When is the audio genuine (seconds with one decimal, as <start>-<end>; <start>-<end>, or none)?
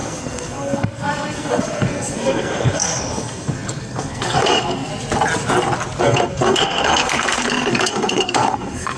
4.9-6.0